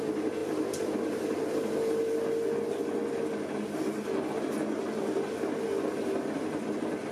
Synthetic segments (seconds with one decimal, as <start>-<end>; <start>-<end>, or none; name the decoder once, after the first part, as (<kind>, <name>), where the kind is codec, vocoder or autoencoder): none